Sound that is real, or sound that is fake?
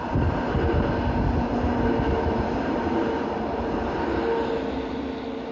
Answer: real